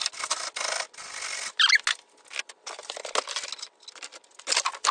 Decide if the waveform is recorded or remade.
recorded